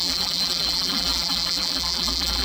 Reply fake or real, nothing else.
fake